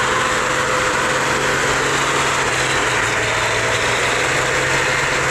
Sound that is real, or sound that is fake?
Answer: real